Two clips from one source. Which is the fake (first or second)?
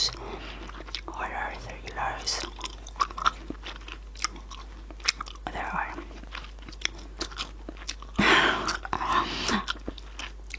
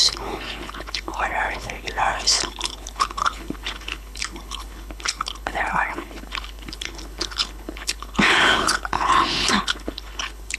second